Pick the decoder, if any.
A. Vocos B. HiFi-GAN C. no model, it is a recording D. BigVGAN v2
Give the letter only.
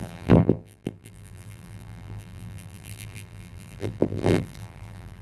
D